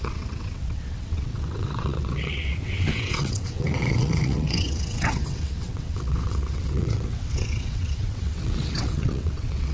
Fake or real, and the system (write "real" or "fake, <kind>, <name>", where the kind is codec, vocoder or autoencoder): fake, vocoder, WaveNeXt